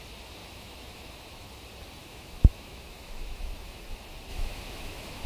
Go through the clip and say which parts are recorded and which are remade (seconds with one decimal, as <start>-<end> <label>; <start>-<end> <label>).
0.0-0.4 recorded; 0.4-1.5 remade; 1.5-2.0 recorded; 2.0-3.8 remade; 3.8-4.3 recorded; 4.3-5.3 remade